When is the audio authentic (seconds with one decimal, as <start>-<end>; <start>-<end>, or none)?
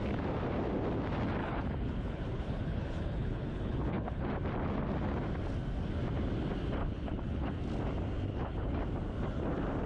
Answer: 0.0-1.4; 4.3-6.8; 7.5-8.3; 8.8-9.9